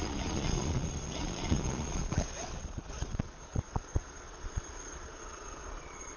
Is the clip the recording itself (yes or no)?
no